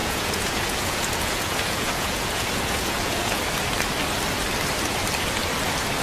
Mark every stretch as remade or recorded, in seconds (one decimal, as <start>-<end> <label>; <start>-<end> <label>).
0.0-3.4 remade; 3.4-6.0 recorded